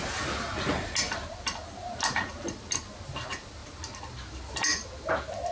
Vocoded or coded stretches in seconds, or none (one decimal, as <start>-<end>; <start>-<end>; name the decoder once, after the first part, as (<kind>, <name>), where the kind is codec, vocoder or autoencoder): none